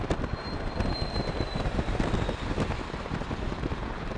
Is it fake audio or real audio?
real